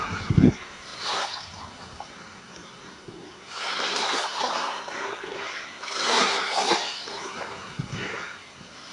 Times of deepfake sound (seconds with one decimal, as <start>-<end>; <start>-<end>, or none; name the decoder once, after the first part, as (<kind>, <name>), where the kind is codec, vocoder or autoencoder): 0.0-8.9 (codec, SNAC)